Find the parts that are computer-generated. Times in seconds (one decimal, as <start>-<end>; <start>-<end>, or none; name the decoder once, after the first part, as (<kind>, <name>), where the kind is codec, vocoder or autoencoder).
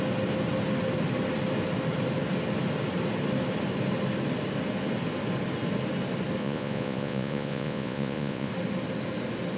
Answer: 6.4-8.5 (vocoder, Vocos)